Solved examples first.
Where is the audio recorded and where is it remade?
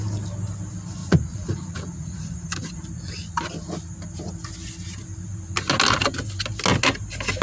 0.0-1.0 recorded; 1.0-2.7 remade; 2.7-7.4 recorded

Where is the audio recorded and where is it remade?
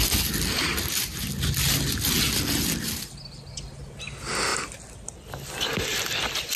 0.0-6.6 recorded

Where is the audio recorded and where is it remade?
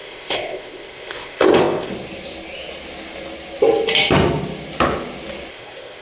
0.0-1.9 remade; 1.9-5.5 recorded; 5.5-6.0 remade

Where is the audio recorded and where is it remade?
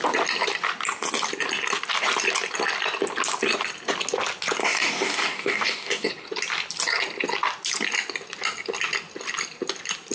0.0-4.6 recorded; 4.6-6.1 remade; 6.1-10.1 recorded